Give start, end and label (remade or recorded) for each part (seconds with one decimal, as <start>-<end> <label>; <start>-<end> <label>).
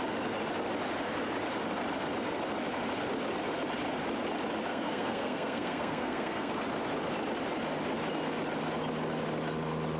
0.0-4.7 recorded; 4.7-6.5 remade; 6.5-10.0 recorded